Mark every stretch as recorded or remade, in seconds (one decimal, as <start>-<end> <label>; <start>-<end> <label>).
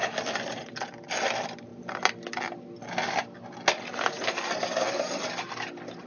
0.0-6.1 recorded